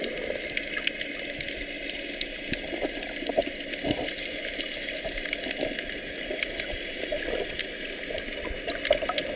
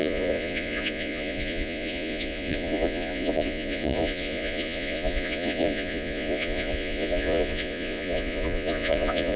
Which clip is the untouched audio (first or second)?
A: first